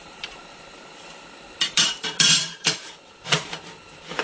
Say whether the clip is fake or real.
fake